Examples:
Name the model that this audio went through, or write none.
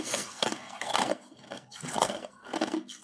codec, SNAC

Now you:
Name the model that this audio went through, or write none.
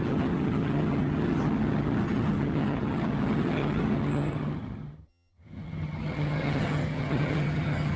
vocoder, HiFi-GAN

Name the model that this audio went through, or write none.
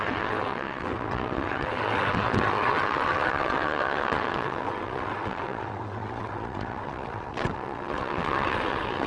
vocoder, WaveNeXt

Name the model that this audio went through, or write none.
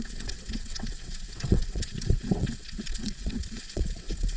vocoder, WaveNeXt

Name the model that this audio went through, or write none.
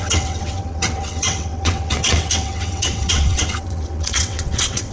vocoder, WaveNeXt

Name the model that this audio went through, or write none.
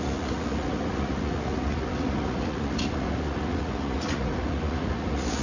vocoder, Vocos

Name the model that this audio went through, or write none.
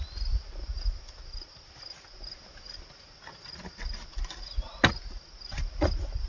none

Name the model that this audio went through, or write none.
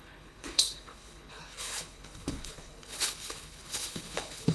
codec, HILCodec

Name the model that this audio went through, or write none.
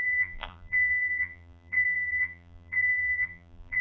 vocoder, BigVGAN v2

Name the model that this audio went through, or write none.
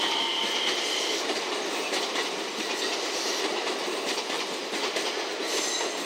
none